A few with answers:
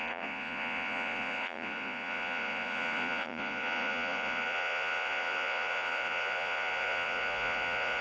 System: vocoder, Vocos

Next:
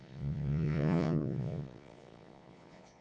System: vocoder, Vocos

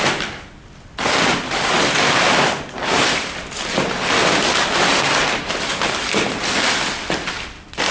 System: none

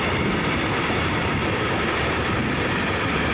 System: none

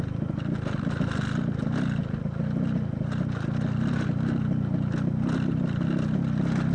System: none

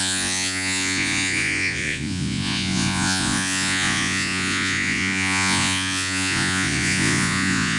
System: vocoder, Vocos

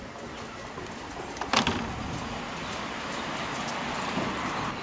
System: none